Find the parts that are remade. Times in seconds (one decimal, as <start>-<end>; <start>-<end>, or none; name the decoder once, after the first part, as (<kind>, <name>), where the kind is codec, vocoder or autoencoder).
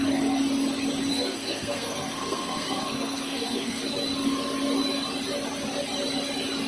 1.1-3.8 (codec, SNAC)